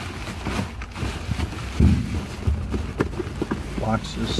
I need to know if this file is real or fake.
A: real